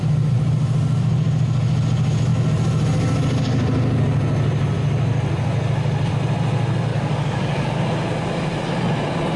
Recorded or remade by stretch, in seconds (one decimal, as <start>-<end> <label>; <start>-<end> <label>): 0.0-6.9 recorded; 6.9-7.8 remade; 7.8-9.4 recorded